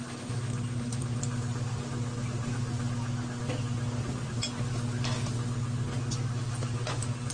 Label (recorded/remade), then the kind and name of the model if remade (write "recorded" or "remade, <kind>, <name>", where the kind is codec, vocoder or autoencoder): recorded